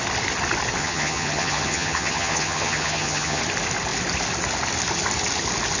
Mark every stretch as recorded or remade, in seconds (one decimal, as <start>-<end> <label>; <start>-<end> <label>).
0.0-0.8 recorded; 0.8-3.4 remade; 3.4-5.8 recorded